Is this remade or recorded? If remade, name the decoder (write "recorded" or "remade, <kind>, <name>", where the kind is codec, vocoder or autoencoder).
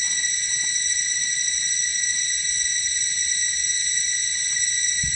remade, vocoder, Vocos